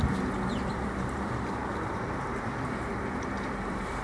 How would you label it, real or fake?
fake